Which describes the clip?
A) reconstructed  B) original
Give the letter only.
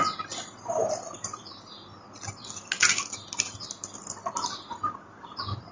B